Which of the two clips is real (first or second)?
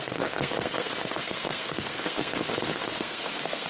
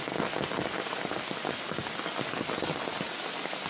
second